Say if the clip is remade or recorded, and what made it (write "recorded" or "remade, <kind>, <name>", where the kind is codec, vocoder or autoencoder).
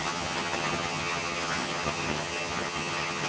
remade, vocoder, HiFi-GAN